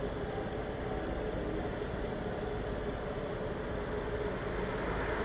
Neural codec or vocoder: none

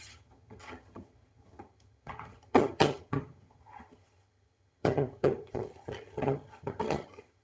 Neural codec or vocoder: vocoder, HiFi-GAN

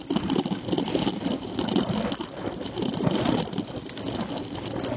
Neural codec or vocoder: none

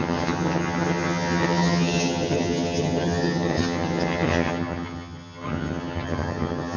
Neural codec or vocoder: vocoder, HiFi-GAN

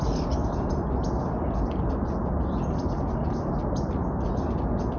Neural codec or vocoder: none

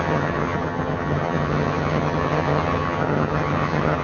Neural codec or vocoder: vocoder, HiFi-GAN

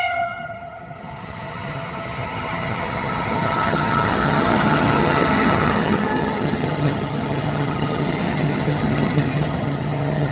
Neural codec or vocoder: vocoder, HiFi-GAN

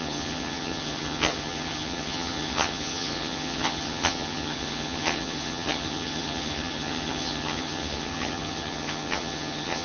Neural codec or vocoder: vocoder, HiFi-GAN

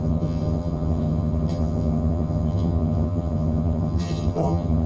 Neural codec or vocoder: vocoder, HiFi-GAN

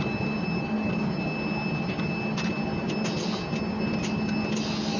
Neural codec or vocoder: none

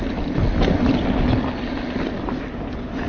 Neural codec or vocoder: none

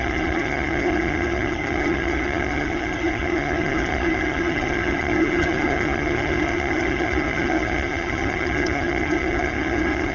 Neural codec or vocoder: vocoder, HiFi-GAN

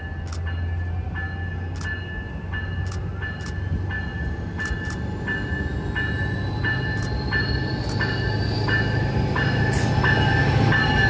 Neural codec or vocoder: none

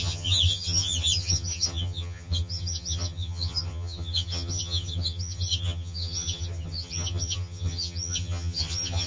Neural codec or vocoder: vocoder, HiFi-GAN